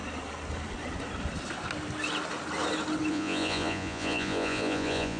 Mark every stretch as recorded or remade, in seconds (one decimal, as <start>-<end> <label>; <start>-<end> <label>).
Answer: 0.0-3.1 recorded; 3.1-5.2 remade